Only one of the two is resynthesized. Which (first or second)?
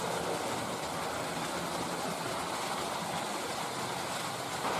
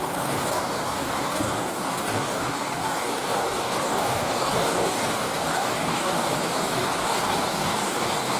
second